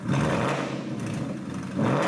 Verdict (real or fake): real